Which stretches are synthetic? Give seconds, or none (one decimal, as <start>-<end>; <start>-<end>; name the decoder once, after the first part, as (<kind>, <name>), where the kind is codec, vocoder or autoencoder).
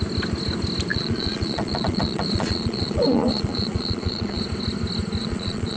0.9-4.4 (vocoder, Vocos); 5.2-5.8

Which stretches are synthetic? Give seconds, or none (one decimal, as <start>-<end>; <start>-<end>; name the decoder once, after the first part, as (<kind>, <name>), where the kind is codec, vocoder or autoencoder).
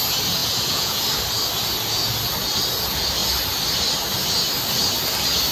0.4-1.0 (vocoder, Vocos)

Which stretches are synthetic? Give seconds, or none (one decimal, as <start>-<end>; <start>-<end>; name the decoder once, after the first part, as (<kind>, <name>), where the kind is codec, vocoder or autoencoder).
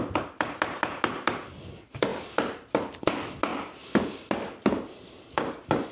none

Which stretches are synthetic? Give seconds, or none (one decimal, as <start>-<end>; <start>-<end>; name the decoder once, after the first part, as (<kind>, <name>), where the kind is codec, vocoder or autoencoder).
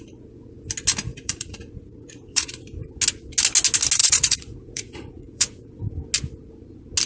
1.1-2.5 (vocoder, Vocos); 4.0-5.7